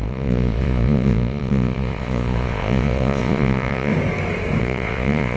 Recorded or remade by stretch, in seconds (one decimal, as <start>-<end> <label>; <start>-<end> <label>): 0.0-3.9 remade; 3.9-4.6 recorded; 4.6-5.4 remade